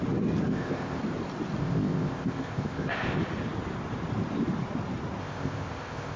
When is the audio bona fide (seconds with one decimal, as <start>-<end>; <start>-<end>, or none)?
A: 0.0-0.5; 1.0-1.6; 3.2-5.2